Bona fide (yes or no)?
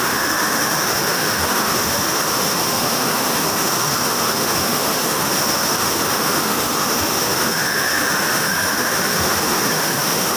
no